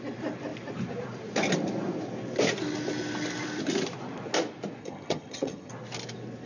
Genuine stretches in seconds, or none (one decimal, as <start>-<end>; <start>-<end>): 0.0-4.8; 5.7-6.5